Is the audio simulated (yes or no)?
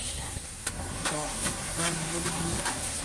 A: yes